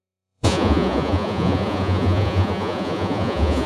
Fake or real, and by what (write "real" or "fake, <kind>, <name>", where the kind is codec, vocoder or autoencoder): fake, vocoder, Vocos